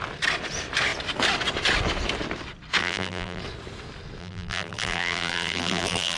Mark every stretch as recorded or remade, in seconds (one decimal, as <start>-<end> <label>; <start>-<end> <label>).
0.0-2.8 recorded; 2.8-3.4 remade; 3.4-4.2 recorded; 4.2-6.2 remade